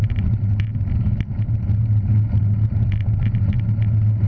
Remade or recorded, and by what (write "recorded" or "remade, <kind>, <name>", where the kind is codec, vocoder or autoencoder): recorded